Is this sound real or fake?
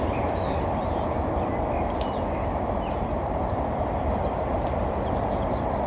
real